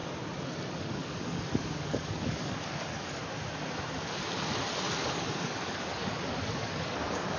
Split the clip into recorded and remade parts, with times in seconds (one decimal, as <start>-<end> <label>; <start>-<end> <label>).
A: 0.0-0.8 recorded; 0.8-3.2 remade; 3.2-5.0 recorded; 5.0-7.4 remade